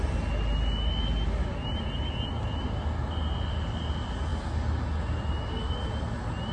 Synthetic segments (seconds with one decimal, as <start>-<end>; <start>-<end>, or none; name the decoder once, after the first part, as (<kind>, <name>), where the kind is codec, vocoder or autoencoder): none